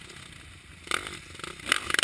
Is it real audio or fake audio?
real